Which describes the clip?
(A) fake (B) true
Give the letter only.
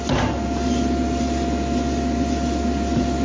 B